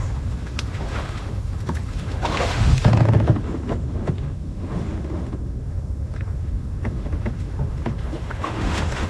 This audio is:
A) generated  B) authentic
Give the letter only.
A